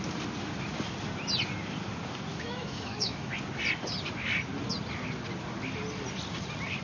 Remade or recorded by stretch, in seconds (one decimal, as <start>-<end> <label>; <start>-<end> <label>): 0.0-2.3 recorded; 2.3-3.3 remade; 3.3-6.8 recorded